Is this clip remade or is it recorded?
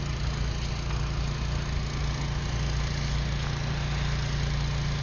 recorded